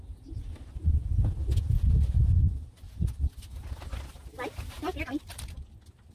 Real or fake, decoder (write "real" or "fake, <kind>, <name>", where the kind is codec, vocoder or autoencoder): real